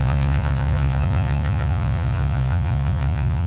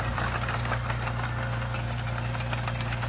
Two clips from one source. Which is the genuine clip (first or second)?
second